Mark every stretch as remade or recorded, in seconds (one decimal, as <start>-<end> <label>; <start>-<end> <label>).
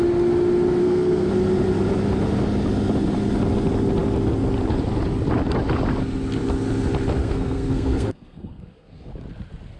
0.0-0.8 recorded; 0.8-1.3 remade; 1.3-7.2 recorded; 7.2-9.1 remade; 9.1-9.8 recorded